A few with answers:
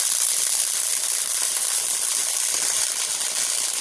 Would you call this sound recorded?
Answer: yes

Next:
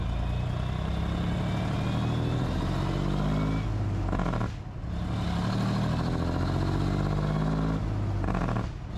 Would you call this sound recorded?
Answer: yes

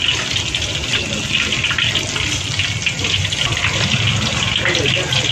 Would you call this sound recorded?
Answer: yes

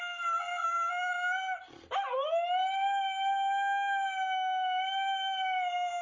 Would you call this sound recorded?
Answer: yes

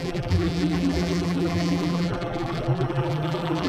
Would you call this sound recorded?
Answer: no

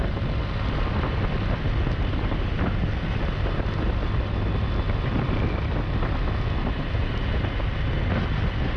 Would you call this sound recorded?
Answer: yes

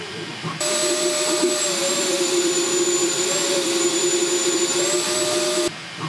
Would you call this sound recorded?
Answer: no